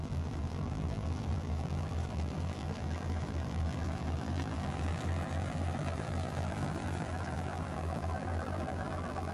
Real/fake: fake